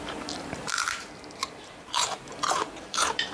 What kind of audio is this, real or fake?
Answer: fake